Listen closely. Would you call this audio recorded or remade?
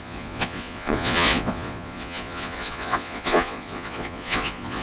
remade